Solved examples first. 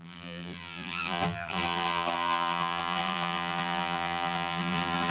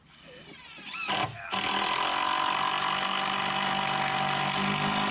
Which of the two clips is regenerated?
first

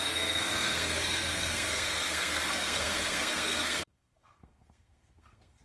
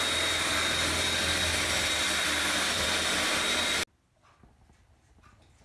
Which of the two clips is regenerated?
first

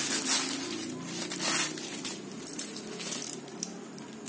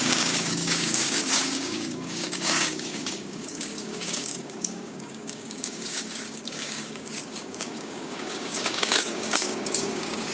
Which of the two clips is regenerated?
second